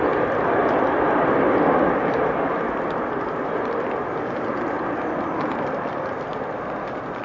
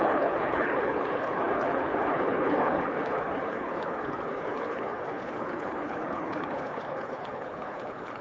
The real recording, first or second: first